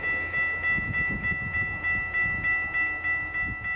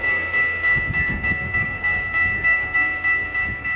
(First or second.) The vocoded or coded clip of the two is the second